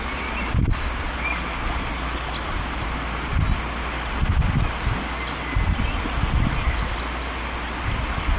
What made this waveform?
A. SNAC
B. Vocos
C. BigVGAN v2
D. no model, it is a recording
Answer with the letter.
D